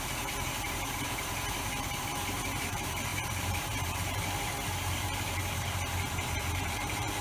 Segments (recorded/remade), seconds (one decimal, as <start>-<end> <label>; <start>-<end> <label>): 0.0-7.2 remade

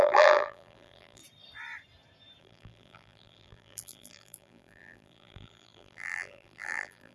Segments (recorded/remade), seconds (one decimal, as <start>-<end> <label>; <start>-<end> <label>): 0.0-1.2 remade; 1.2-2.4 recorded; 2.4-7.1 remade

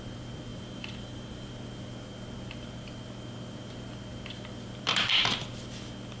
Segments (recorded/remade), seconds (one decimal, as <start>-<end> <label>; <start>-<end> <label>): 0.0-0.5 recorded; 0.5-1.5 remade; 1.5-6.2 recorded

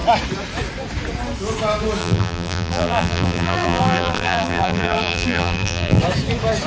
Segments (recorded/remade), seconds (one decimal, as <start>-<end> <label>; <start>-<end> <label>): 0.0-2.0 recorded; 2.0-6.0 remade; 6.0-6.7 recorded